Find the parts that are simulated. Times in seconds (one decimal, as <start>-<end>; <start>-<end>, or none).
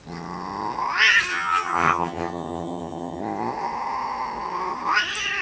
1.3-3.2